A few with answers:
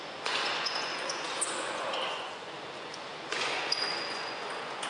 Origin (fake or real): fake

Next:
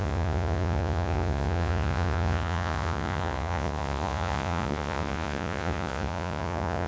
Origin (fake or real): fake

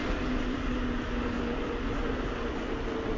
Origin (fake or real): real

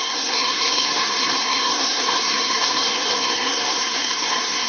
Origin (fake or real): fake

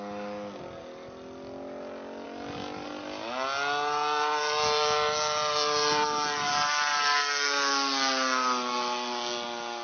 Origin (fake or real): real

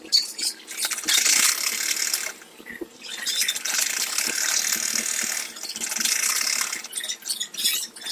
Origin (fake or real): real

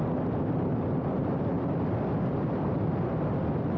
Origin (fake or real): real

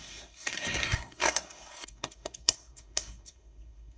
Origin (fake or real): fake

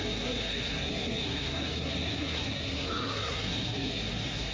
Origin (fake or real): fake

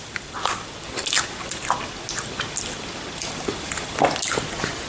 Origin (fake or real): real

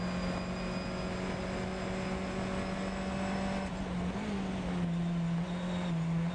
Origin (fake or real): real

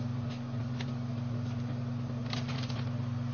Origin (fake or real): real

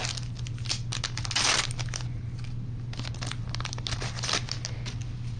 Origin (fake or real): real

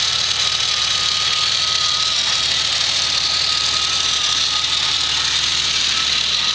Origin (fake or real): real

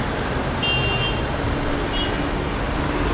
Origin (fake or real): real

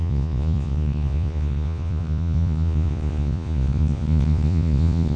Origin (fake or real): fake